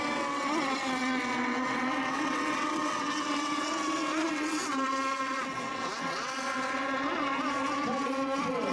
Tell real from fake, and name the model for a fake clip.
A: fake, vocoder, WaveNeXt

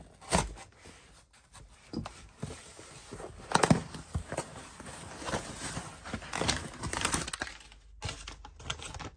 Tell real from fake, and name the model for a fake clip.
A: real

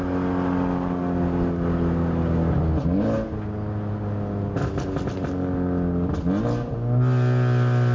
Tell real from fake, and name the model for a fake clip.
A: real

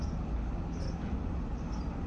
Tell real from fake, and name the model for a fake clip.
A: real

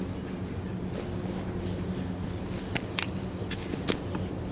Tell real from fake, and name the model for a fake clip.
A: real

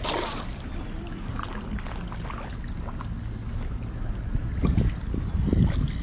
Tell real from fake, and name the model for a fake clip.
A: real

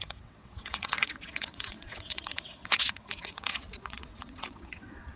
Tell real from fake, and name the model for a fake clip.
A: fake, vocoder, WaveNeXt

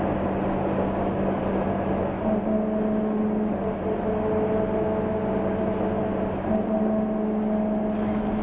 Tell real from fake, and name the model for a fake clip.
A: real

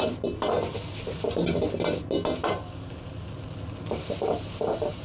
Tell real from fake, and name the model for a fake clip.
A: real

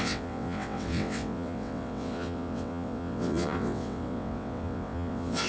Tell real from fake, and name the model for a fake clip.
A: fake, vocoder, WaveNeXt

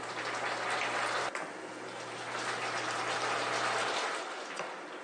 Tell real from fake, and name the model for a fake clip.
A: real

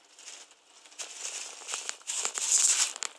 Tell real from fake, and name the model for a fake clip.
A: real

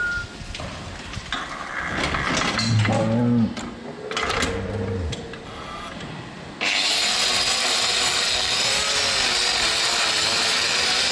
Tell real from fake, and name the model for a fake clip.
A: real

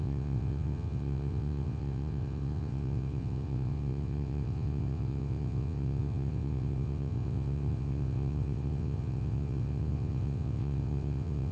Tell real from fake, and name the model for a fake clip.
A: fake, vocoder, WaveNeXt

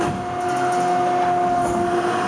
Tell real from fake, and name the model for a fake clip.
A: real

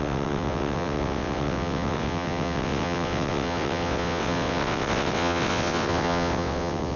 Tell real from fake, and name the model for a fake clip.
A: fake, vocoder, WaveNeXt